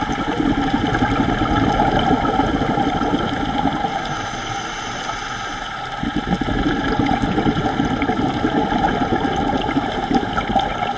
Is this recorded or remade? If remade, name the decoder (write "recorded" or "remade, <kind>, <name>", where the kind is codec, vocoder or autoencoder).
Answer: recorded